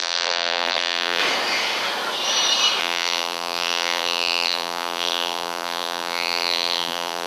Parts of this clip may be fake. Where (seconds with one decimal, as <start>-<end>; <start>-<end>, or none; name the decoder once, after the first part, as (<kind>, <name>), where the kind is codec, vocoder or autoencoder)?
0.0-1.2 (vocoder, BigVGAN v2); 2.8-7.3